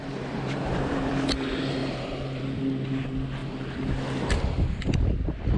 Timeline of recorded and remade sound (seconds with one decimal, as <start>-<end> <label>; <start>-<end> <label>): 0.0-1.1 remade; 1.1-1.8 recorded; 1.8-2.4 remade; 2.4-5.6 recorded